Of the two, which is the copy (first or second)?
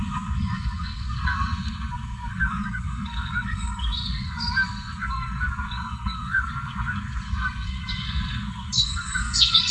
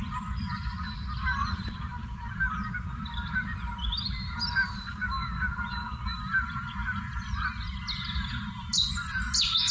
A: first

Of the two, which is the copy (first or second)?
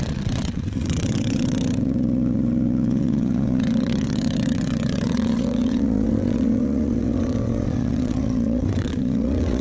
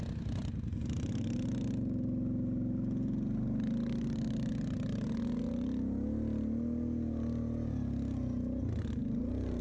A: first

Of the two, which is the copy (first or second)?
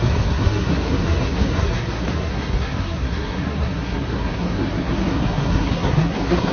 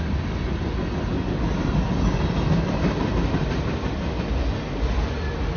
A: first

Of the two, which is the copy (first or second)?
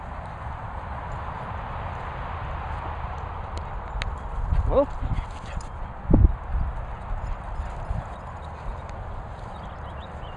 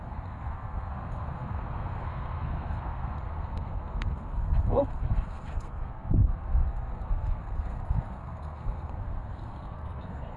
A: second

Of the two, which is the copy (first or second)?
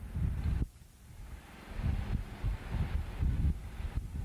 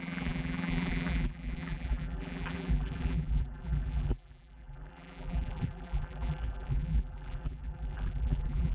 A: second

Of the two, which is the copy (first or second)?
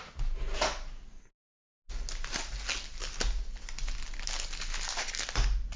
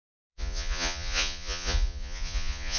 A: second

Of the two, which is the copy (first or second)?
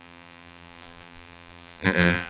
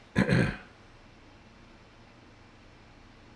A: first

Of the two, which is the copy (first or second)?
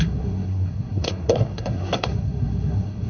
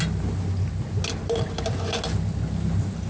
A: first